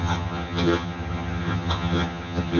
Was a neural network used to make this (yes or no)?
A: yes